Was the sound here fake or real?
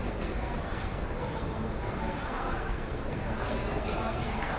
fake